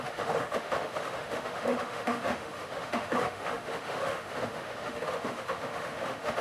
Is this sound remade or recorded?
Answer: remade